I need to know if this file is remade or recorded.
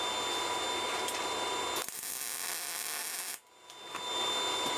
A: recorded